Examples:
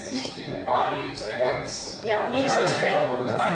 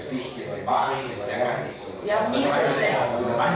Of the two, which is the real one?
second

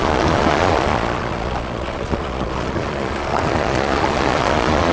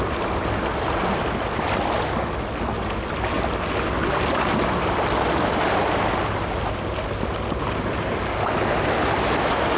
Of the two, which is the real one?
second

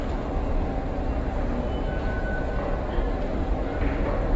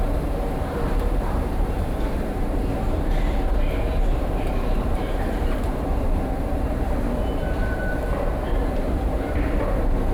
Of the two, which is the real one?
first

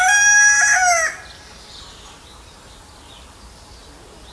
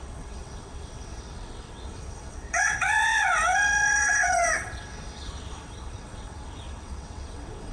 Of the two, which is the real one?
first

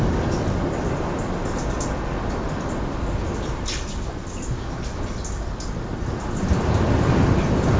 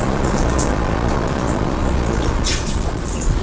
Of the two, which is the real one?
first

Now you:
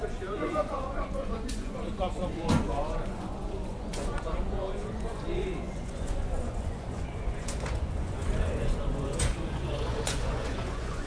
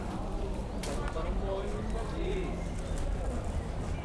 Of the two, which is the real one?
second